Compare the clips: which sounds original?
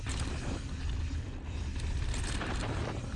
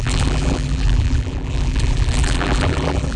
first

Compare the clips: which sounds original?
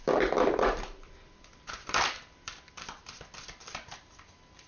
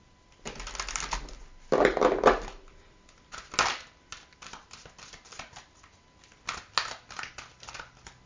second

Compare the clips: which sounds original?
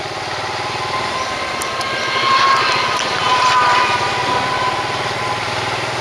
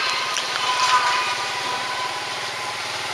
first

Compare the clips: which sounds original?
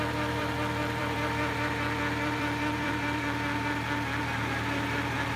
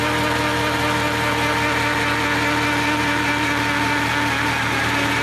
second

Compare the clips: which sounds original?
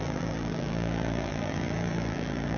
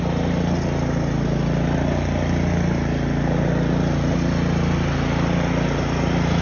second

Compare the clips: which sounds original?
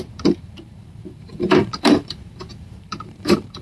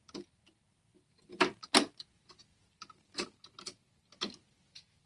second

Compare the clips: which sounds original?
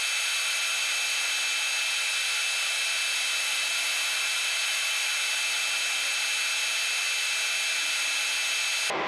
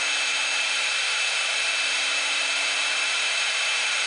first